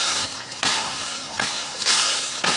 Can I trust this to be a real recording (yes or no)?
no